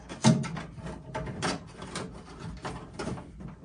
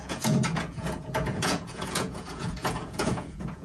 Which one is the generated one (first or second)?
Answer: second